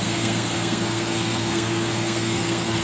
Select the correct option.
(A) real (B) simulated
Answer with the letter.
B